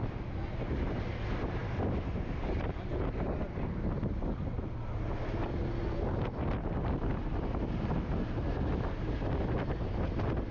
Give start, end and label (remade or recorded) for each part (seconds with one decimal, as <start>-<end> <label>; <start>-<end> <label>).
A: 0.0-10.5 recorded